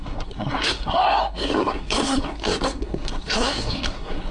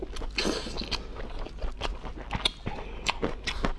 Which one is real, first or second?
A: second